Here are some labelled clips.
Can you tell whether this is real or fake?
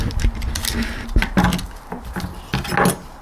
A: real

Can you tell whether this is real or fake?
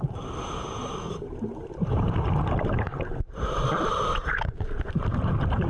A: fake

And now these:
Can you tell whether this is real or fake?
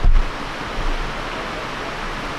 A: real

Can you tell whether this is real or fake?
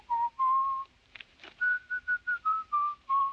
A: fake